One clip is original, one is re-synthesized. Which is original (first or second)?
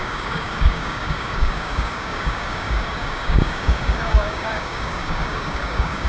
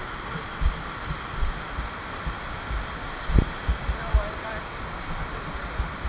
second